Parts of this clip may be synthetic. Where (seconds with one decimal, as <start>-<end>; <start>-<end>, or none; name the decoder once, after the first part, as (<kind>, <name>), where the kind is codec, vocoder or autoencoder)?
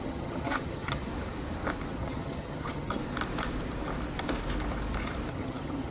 0.0-1.1 (vocoder, HiFi-GAN); 1.9-3.0; 5.3-5.9